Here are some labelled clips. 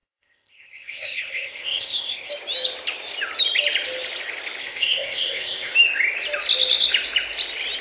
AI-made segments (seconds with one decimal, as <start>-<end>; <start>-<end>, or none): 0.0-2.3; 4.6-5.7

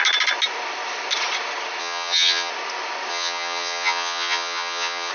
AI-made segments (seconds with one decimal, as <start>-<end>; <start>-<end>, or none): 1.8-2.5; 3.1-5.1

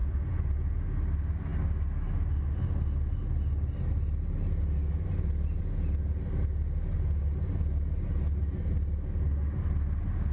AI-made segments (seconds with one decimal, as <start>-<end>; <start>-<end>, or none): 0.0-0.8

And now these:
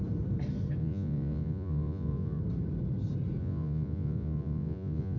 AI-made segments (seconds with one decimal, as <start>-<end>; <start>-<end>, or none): 0.8-2.4; 3.4-5.2

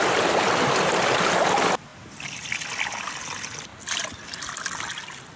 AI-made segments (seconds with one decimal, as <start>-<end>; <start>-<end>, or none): none

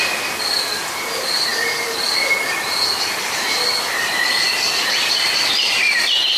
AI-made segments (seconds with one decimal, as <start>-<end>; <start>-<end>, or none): none

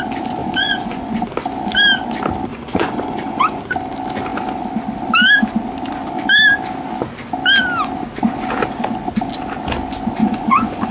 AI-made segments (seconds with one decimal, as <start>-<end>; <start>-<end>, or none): 0.4-1.1; 2.5-3.6; 10.2-10.9

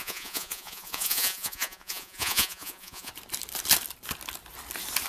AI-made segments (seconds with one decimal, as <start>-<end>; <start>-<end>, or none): 0.0-3.1